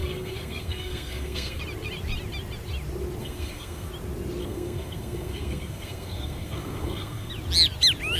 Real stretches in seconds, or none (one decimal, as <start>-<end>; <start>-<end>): 1.6-3.2; 3.9-4.4; 7.3-8.2